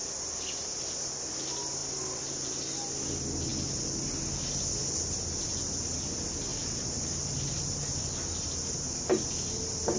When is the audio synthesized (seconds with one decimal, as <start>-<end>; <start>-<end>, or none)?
none